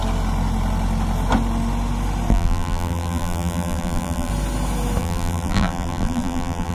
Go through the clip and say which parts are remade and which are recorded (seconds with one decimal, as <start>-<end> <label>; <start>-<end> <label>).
0.0-2.3 recorded; 2.3-4.3 remade; 4.3-5.0 recorded; 5.0-6.7 remade